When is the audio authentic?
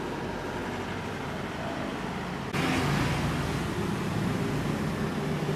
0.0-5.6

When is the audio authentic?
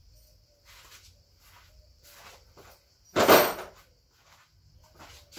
0.0-5.4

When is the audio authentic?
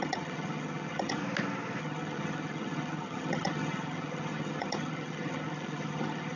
1.2-1.8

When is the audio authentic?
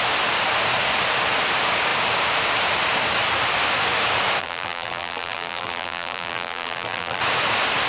0.0-4.4; 7.2-7.9